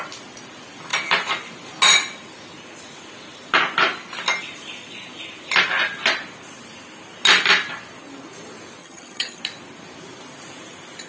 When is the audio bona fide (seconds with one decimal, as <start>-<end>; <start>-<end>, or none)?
0.0-8.8; 9.4-11.1